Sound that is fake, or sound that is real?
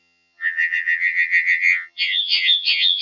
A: fake